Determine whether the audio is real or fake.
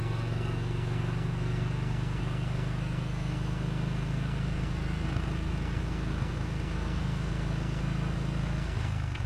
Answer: fake